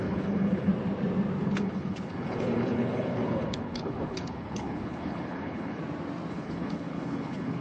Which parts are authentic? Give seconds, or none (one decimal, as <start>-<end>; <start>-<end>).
0.7-1.4; 5.8-6.3